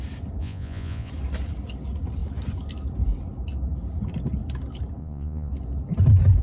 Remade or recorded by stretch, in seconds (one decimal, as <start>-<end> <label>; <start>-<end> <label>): 0.0-0.4 recorded; 0.4-1.1 remade; 1.1-5.0 recorded; 5.0-5.5 remade; 5.5-6.4 recorded